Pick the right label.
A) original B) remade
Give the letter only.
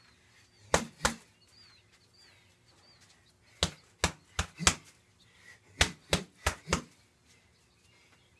A